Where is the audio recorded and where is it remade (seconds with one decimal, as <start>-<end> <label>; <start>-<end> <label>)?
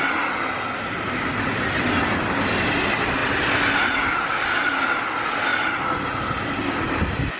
0.0-7.4 recorded